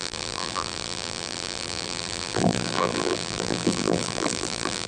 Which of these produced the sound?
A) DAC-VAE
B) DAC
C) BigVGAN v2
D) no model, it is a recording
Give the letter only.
C